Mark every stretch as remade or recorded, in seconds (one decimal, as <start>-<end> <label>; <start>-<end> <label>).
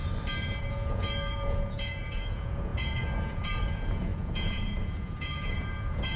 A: 0.0-0.7 recorded; 0.7-6.2 remade